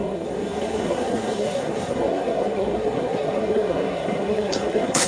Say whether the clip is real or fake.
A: fake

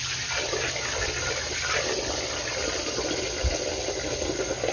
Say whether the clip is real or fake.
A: real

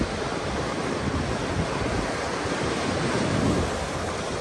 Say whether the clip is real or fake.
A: real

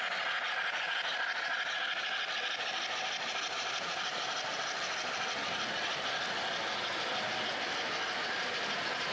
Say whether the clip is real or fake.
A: real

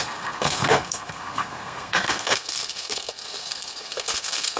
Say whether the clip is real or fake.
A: fake